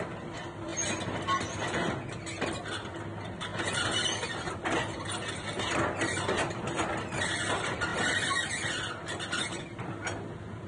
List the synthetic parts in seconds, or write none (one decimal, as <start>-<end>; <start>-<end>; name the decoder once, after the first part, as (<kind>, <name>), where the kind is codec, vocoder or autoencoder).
none